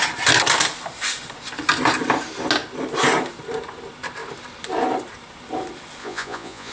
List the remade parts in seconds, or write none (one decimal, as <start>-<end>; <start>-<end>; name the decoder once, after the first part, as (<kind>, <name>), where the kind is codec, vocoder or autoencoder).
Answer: 6.0-6.7 (vocoder, Vocos)